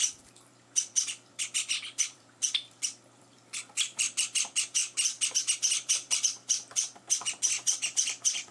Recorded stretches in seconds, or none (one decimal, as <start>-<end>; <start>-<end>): none